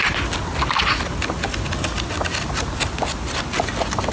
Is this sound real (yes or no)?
yes